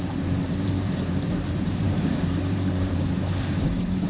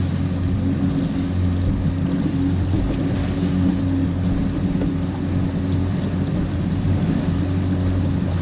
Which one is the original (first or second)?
second